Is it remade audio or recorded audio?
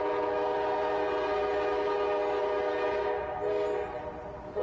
recorded